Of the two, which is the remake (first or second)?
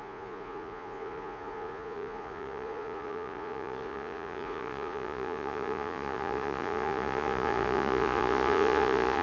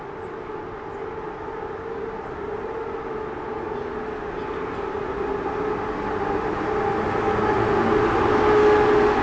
first